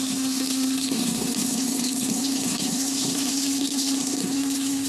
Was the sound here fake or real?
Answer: fake